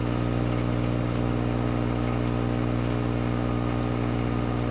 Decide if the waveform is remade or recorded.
recorded